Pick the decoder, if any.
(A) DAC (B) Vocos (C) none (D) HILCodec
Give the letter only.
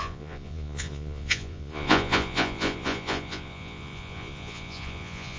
B